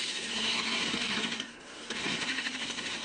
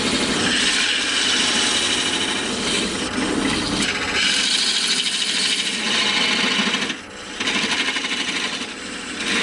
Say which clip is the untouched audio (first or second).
second